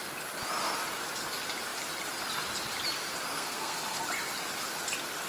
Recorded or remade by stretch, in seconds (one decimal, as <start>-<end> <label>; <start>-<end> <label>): 0.0-3.3 recorded; 3.3-4.0 remade; 4.0-5.3 recorded